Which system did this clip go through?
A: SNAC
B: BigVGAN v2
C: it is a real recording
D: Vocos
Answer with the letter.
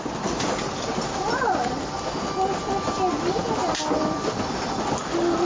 C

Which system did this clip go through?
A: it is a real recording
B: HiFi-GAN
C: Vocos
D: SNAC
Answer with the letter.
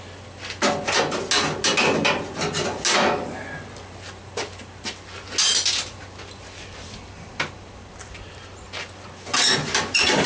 A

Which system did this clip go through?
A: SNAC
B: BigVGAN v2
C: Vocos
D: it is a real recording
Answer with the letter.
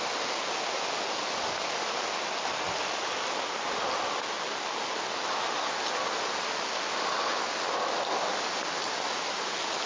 D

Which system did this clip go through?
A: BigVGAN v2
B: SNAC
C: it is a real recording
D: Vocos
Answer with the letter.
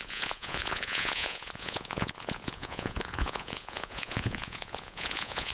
D